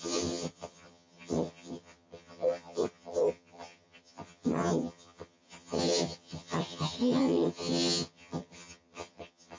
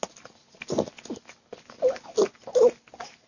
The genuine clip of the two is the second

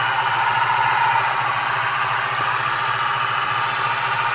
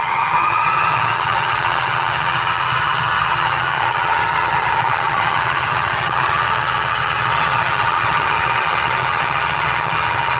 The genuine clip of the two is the first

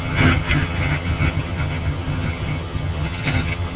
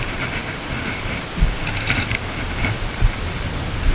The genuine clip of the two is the second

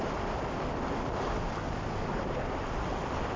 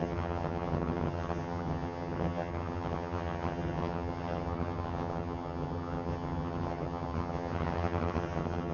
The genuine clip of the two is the first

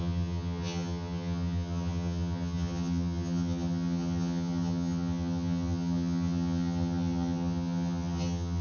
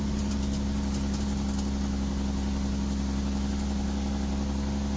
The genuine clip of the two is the second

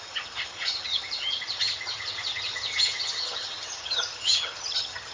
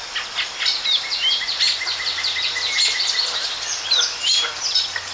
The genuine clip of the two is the second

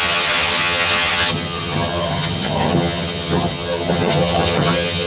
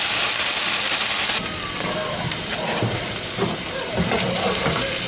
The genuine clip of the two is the second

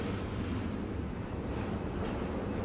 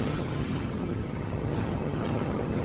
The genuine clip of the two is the first